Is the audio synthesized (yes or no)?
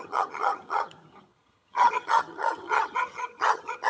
yes